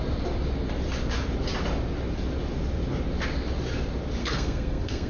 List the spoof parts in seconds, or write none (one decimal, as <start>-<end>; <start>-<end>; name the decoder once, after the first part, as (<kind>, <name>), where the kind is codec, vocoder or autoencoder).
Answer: 4.2-5.1 (codec, SNAC)